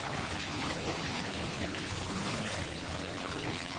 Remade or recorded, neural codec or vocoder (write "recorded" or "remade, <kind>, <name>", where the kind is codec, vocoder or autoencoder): remade, codec, HILCodec